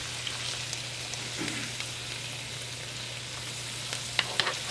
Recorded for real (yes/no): yes